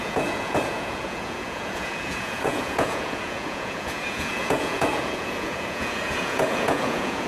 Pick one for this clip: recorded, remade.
remade